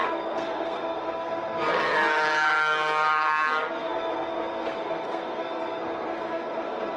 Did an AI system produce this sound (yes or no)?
yes